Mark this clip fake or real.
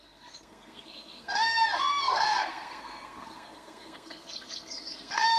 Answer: fake